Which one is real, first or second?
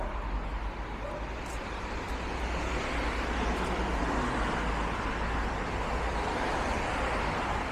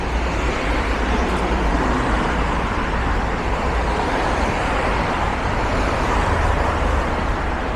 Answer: first